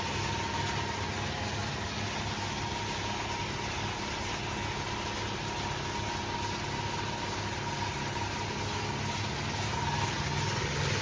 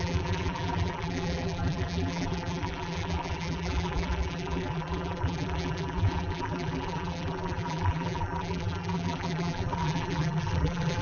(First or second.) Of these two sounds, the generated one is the second